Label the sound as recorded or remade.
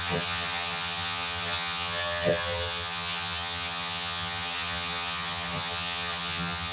remade